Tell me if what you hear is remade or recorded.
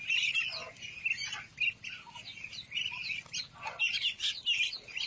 recorded